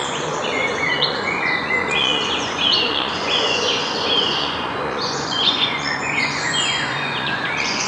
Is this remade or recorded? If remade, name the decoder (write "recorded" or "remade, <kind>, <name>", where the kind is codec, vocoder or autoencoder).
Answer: remade, vocoder, Vocos